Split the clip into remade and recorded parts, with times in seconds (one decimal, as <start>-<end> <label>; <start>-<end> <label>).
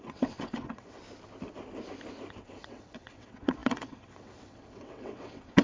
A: 0.0-1.0 remade; 1.0-2.4 recorded; 2.4-5.6 remade